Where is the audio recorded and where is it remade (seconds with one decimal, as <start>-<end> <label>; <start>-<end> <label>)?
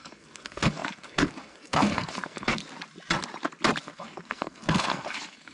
0.0-2.6 remade; 2.6-3.8 recorded; 3.8-5.5 remade